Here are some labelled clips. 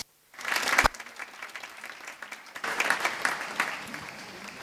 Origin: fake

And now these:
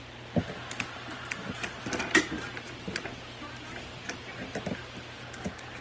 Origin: real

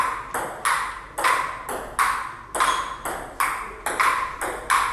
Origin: real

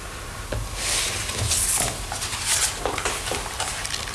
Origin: real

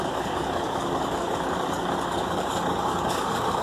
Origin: fake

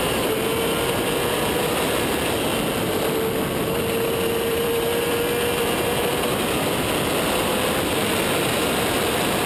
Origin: real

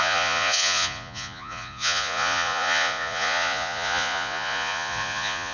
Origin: fake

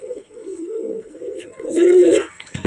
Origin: fake